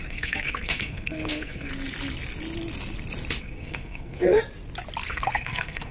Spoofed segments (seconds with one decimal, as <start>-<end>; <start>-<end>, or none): 0.0-1.7; 3.4-4.4; 5.1-5.9